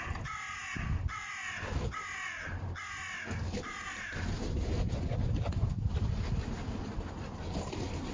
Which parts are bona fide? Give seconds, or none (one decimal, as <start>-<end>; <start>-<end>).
0.0-8.1